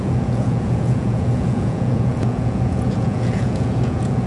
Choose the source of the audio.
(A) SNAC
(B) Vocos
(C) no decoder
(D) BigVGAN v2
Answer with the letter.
B